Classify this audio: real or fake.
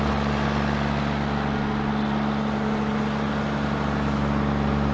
real